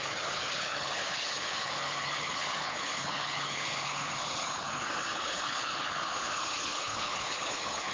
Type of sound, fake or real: fake